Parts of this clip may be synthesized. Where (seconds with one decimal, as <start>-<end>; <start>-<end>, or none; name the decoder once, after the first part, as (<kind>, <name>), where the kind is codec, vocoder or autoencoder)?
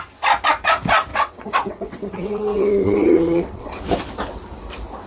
1.1-3.8 (vocoder, WaveNeXt)